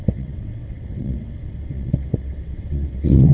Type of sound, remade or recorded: remade